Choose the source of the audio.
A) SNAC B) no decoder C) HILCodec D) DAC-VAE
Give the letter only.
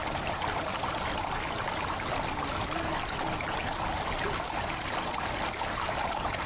B